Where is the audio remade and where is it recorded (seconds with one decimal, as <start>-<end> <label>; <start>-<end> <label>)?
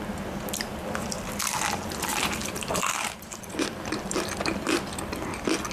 0.0-0.7 recorded; 0.7-1.5 remade; 1.5-2.1 recorded; 2.1-4.9 remade; 4.9-5.7 recorded